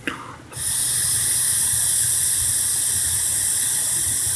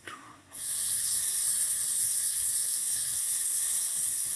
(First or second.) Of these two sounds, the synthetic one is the second